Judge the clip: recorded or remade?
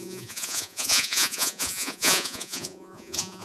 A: remade